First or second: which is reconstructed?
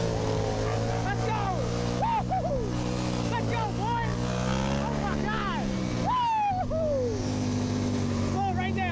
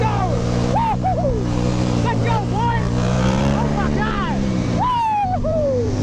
second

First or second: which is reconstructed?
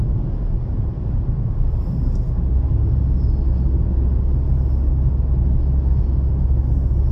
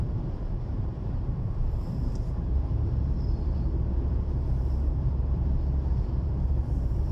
second